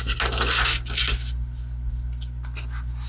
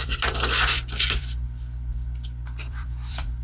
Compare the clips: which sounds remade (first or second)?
second